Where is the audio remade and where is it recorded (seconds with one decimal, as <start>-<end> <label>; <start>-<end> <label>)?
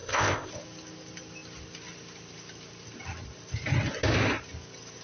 0.0-0.5 remade; 0.5-5.0 recorded